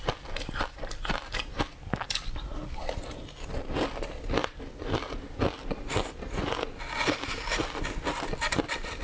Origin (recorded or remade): recorded